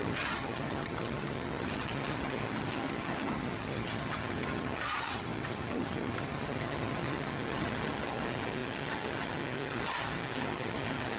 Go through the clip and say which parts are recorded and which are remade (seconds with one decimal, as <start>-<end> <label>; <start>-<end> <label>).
0.0-11.2 remade